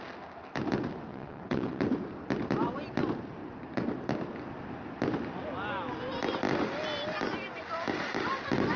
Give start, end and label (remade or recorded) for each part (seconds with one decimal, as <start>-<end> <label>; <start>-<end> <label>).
0.0-1.1 recorded; 1.1-1.8 remade; 1.8-8.8 recorded